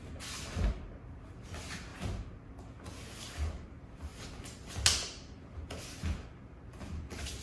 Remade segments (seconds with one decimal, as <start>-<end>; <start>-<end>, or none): none